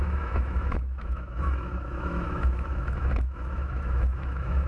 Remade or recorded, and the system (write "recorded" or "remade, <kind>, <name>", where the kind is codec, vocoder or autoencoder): remade, autoencoder, DAC-VAE